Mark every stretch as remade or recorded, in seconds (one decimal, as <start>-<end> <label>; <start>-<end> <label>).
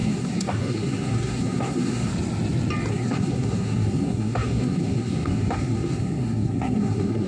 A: 0.0-2.1 remade; 2.1-2.9 recorded; 2.9-7.3 remade